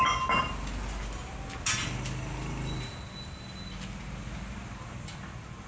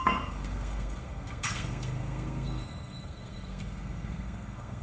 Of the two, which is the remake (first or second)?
second